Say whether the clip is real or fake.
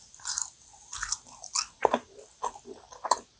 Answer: real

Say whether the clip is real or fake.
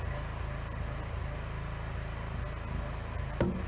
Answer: real